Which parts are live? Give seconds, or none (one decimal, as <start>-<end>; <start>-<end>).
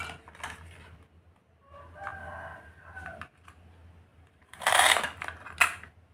0.0-4.1; 5.0-6.1